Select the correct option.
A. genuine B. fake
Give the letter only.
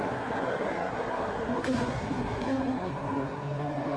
B